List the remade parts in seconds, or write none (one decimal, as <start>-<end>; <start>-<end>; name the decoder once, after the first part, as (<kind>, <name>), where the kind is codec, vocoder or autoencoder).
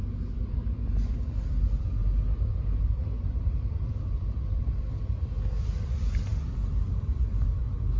0.0-2.0 (vocoder, BigVGAN v2); 2.5-8.0